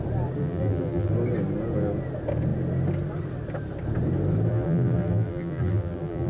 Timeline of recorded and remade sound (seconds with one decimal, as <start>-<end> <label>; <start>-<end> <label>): 0.0-0.4 recorded; 0.4-1.1 remade; 1.1-4.5 recorded; 4.5-6.3 remade